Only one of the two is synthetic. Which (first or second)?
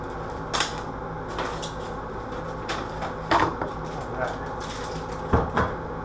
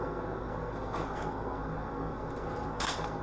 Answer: second